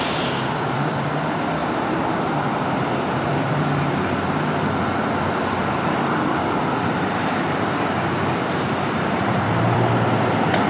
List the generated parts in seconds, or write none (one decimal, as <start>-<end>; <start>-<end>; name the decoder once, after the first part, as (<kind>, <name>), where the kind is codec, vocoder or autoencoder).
0.0-10.7 (vocoder, BigVGAN v2)